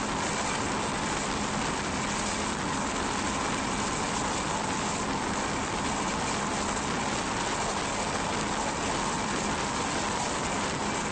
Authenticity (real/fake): real